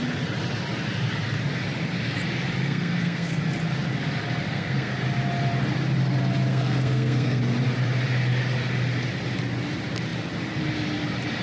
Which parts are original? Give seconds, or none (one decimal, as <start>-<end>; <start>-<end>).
0.0-2.6; 3.4-4.4; 4.9-6.5; 7.4-11.4